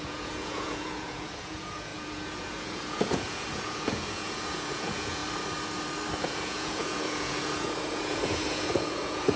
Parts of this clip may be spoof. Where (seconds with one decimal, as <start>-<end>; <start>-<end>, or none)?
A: 0.0-5.2; 6.2-9.4